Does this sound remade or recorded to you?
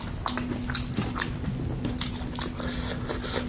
recorded